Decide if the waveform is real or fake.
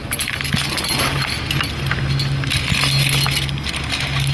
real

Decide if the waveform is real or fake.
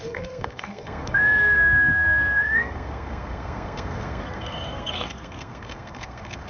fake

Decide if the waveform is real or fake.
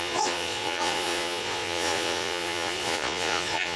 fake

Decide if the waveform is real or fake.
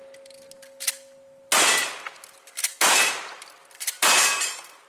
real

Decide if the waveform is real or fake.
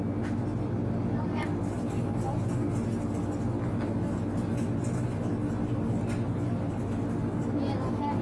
real